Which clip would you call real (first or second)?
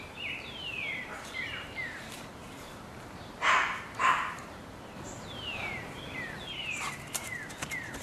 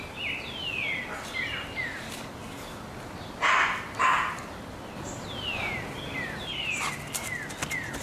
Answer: second